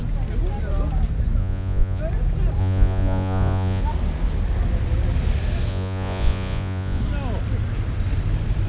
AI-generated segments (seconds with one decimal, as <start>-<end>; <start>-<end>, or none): 1.4-2.0; 2.6-3.8; 5.7-7.0